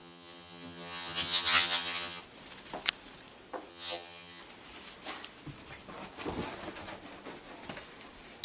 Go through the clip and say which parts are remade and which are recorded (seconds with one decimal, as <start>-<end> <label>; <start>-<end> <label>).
0.0-2.2 remade; 2.2-3.7 recorded; 3.7-4.4 remade; 4.4-8.4 recorded